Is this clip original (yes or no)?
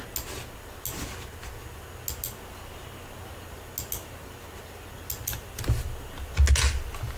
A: yes